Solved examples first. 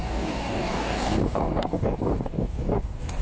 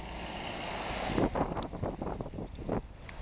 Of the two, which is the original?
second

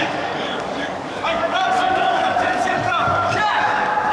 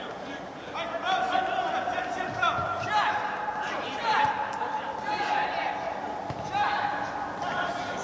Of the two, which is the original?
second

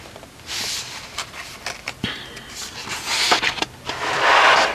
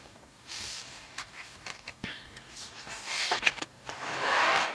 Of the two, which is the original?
first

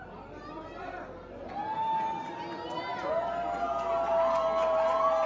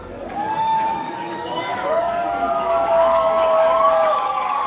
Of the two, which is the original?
first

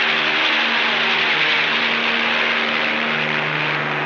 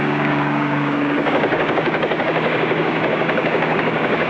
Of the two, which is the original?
first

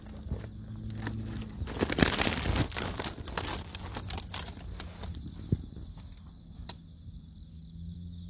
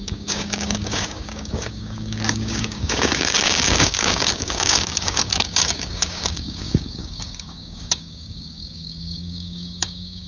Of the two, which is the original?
first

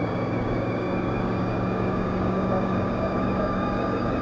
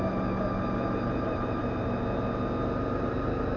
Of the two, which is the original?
second